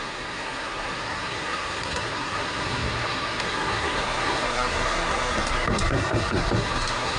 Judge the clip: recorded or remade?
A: remade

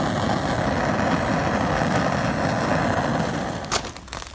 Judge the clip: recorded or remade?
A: recorded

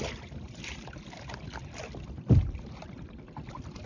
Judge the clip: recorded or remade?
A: recorded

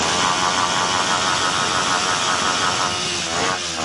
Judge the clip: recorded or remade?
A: recorded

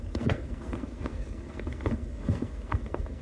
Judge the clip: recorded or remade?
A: remade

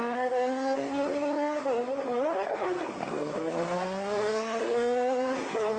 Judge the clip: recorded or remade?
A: remade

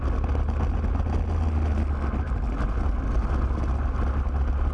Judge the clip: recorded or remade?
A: recorded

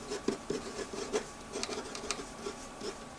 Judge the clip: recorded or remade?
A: recorded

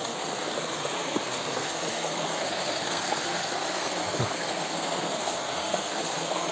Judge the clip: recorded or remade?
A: remade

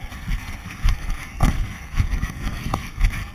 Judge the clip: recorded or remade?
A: remade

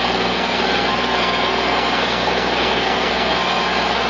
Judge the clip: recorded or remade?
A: remade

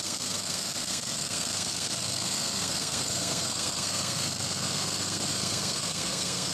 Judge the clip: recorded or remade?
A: remade